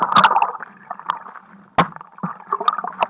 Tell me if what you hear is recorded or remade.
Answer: recorded